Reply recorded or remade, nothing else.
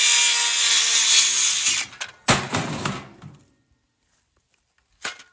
recorded